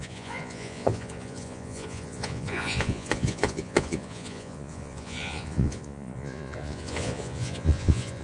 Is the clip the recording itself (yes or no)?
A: no